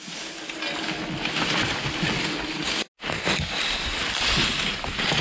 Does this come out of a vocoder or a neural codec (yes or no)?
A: no